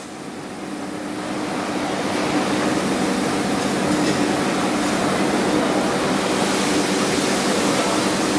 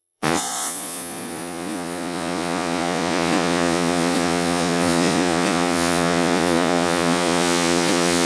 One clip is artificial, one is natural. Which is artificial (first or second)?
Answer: second